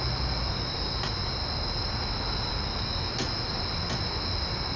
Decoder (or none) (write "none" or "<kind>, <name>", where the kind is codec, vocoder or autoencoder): none